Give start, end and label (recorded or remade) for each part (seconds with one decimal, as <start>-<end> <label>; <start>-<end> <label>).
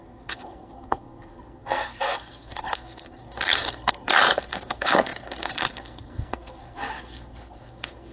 0.0-8.1 remade